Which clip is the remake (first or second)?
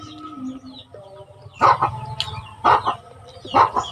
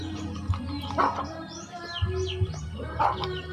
second